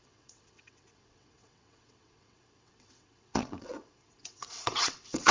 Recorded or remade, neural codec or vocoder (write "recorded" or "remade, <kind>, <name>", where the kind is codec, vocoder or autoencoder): remade, vocoder, WaveNeXt